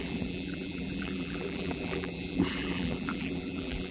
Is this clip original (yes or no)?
no